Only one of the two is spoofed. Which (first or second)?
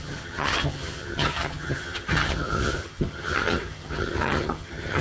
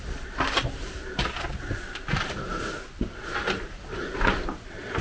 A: first